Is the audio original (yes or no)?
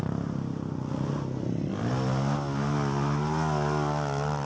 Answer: yes